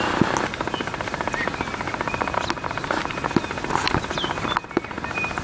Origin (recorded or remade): recorded